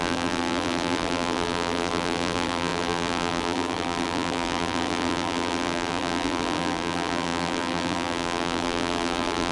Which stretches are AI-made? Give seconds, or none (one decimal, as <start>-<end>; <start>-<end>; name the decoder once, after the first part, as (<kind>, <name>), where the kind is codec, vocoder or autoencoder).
0.0-9.5 (vocoder, BigVGAN v2)